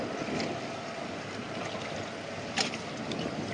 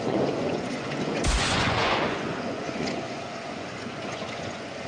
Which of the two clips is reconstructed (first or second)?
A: second